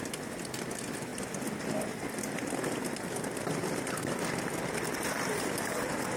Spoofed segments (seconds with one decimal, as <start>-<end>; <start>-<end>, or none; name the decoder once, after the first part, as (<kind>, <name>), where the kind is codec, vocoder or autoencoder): 1.1-3.9 (vocoder, BigVGAN v2)